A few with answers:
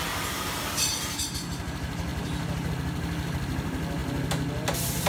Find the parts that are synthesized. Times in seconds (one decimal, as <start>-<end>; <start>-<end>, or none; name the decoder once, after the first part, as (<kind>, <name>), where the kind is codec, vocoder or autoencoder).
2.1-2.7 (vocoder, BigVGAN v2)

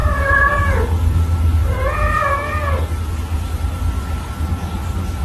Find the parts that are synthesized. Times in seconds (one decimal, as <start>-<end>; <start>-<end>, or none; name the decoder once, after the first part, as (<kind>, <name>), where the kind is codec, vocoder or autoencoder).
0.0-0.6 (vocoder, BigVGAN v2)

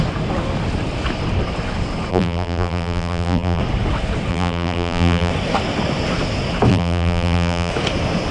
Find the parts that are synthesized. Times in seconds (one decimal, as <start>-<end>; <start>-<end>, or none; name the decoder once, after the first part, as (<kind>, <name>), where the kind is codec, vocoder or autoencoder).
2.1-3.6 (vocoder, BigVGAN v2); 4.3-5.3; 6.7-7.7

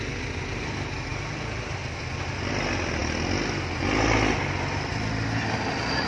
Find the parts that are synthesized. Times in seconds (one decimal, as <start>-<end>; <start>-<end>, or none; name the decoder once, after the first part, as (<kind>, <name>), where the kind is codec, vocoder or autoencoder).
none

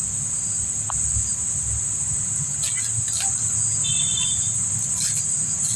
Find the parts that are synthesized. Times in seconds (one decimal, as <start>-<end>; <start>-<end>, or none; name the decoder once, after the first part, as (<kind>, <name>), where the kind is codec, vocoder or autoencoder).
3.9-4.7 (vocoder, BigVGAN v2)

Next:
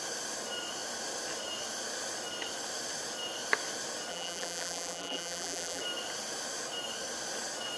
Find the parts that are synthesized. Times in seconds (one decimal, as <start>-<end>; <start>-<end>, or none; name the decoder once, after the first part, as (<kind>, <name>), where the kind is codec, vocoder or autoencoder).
4.1-5.8 (vocoder, BigVGAN v2)